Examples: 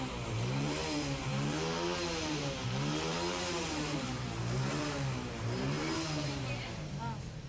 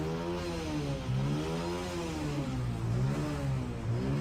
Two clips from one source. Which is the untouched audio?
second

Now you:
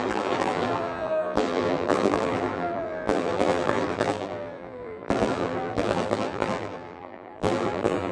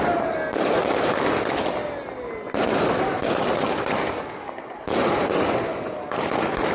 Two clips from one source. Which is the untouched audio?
second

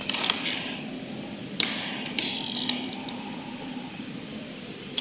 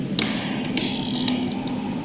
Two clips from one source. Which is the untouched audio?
second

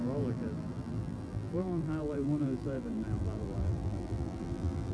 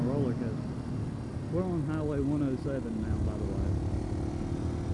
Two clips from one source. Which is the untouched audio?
second